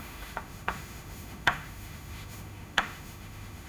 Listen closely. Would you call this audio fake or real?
fake